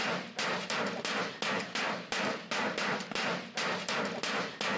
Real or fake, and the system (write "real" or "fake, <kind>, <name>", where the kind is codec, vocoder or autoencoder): real